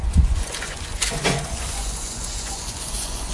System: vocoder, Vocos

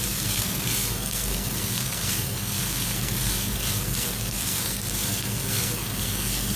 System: codec, SNAC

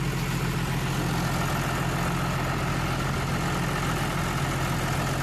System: none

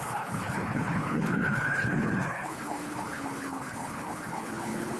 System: codec, HILCodec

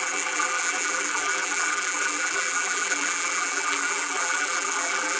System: vocoder, BigVGAN v2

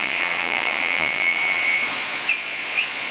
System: vocoder, Vocos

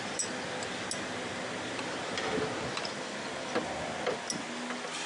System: none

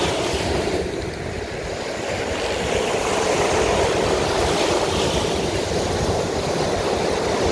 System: none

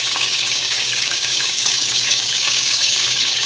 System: codec, DAC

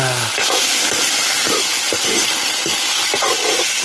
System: none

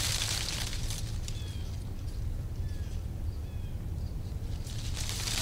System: none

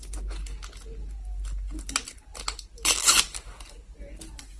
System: none